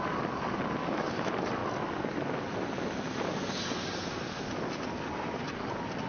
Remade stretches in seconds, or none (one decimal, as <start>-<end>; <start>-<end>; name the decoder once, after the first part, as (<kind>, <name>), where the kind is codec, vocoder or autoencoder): none